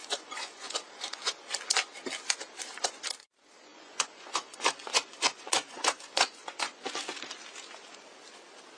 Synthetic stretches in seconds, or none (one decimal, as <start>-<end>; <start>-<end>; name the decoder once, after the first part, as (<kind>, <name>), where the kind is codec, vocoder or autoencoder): 0.0-1.3 (vocoder, Vocos); 3.7-6.8